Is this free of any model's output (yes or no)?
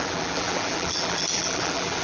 no